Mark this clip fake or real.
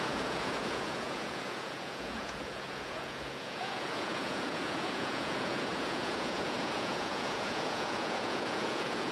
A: fake